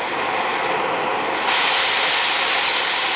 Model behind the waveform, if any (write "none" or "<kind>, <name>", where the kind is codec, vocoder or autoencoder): none